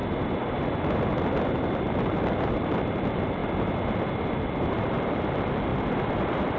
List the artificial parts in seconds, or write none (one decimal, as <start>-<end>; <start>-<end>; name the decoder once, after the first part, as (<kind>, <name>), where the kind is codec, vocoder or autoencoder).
1.8-3.4 (vocoder, BigVGAN v2); 4.7-5.7